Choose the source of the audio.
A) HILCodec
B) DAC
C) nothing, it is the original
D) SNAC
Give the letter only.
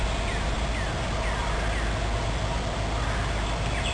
C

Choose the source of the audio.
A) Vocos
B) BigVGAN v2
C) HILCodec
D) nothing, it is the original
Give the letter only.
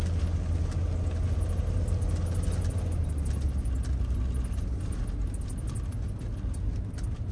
D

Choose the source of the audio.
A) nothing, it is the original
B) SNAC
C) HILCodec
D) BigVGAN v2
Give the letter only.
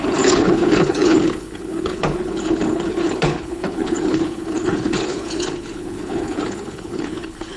C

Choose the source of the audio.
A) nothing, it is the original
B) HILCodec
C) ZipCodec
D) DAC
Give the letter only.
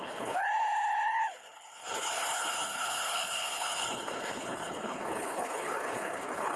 B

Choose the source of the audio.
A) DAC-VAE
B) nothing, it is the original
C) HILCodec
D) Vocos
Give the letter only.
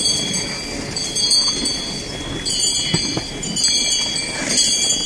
B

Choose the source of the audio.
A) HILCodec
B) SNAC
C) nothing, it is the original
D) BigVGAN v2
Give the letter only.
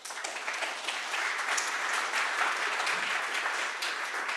C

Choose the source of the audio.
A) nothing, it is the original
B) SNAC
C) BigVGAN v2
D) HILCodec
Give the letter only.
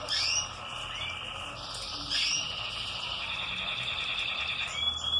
A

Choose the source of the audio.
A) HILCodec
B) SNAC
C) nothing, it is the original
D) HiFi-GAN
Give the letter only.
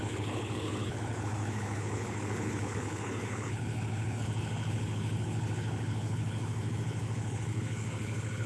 A